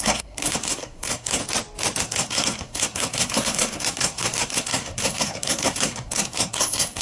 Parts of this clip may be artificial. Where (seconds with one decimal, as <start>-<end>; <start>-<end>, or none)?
0.0-1.4; 2.0-7.0